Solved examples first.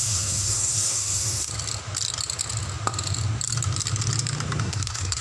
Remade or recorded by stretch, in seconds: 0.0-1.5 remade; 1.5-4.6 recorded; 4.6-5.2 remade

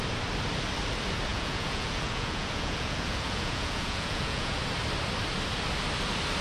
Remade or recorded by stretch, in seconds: 0.0-1.3 recorded; 1.3-4.6 remade; 4.6-6.4 recorded